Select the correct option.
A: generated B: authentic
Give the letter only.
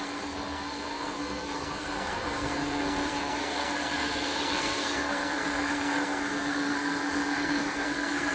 A